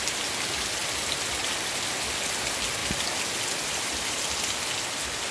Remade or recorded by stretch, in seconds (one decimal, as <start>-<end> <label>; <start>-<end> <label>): 0.0-5.3 recorded